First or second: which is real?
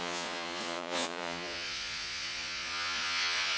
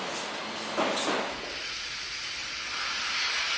second